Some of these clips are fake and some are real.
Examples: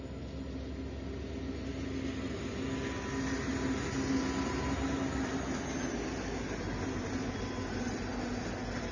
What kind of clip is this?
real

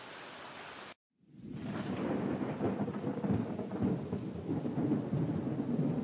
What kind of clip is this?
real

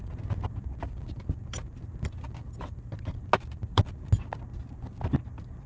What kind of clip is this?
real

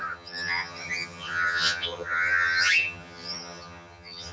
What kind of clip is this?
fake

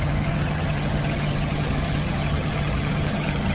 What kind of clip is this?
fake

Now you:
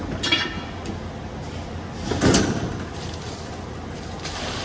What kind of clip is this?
real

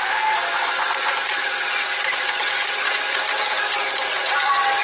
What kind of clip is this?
real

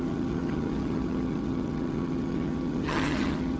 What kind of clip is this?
fake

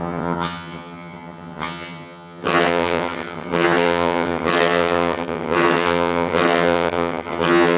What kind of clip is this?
fake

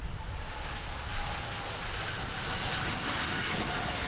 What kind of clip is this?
real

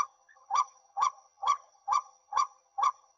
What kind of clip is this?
fake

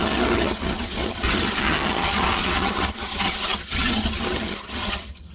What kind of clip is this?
fake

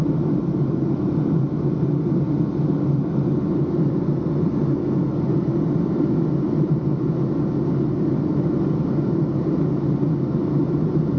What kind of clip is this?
real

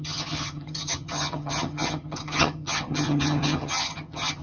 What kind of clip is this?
fake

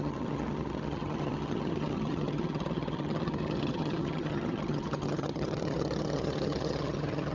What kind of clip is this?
fake